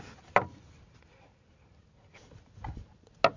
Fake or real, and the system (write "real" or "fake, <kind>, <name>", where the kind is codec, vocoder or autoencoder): real